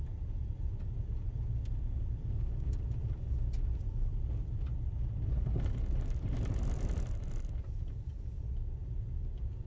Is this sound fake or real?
real